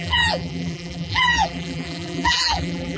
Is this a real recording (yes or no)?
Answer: no